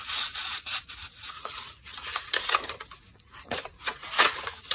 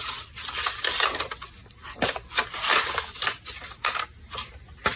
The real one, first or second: second